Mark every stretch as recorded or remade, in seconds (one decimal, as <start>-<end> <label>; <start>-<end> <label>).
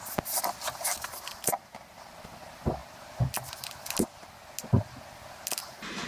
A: 0.0-6.1 recorded